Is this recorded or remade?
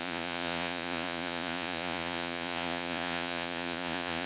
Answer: remade